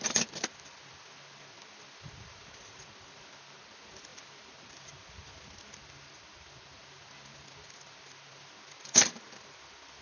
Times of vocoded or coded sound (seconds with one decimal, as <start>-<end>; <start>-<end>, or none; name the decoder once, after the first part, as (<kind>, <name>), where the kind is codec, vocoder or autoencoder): none